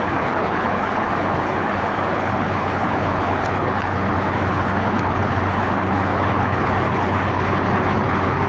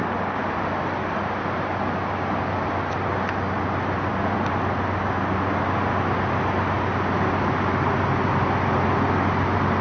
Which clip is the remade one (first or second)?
first